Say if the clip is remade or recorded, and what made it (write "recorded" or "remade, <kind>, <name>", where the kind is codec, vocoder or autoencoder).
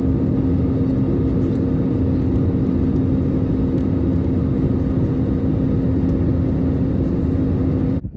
recorded